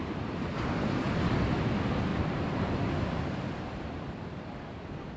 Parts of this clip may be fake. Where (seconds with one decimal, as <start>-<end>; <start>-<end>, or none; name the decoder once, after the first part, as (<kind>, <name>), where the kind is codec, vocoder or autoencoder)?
none